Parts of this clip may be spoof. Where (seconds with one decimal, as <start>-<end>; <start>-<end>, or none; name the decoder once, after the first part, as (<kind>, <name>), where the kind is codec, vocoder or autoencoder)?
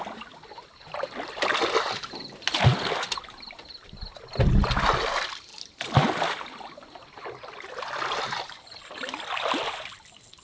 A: none